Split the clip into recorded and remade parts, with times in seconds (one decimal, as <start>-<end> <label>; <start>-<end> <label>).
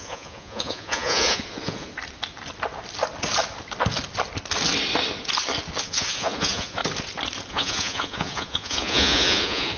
0.0-1.9 remade; 1.9-5.8 recorded; 5.8-6.8 remade; 6.8-7.5 recorded; 7.5-9.8 remade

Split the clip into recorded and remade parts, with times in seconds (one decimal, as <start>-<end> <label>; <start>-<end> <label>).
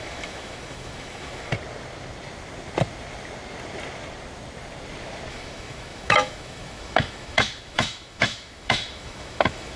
0.0-1.5 remade; 1.5-5.3 recorded; 5.3-9.8 remade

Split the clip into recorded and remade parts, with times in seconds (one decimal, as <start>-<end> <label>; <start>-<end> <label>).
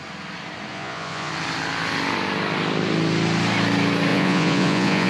0.0-0.7 recorded; 0.7-1.3 remade; 1.3-4.1 recorded; 4.1-5.1 remade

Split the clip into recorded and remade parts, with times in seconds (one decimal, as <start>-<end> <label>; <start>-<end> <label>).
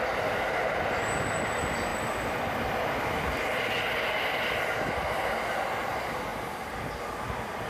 0.0-1.9 recorded; 1.9-5.3 remade; 5.3-7.7 recorded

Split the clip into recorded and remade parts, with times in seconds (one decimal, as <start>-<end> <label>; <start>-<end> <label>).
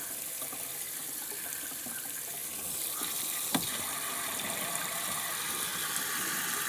0.0-5.7 remade; 5.7-6.2 recorded; 6.2-6.7 remade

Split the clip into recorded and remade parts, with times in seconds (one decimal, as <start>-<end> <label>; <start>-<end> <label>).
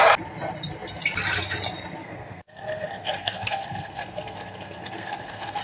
0.0-2.0 recorded; 2.0-5.6 remade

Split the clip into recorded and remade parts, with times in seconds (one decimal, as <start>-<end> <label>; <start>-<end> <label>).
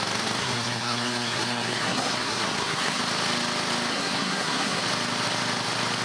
0.0-0.4 recorded; 0.4-3.0 remade; 3.0-3.9 recorded; 3.9-4.8 remade; 4.8-6.0 recorded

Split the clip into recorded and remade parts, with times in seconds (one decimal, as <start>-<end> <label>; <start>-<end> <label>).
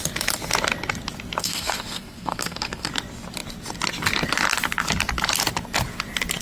0.0-1.4 recorded; 1.4-2.9 remade; 2.9-6.4 recorded